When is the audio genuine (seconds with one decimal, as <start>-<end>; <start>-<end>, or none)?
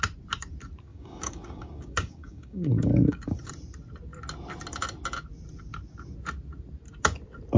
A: 0.0-0.9; 3.5-7.6